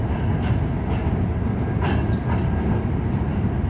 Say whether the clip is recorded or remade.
recorded